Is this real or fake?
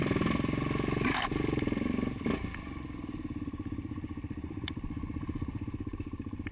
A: fake